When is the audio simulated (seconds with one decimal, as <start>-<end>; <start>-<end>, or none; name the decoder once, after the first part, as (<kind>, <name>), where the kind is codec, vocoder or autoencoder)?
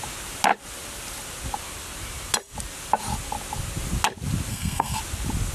4.5-5.0 (codec, SNAC)